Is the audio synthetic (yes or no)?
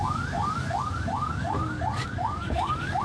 yes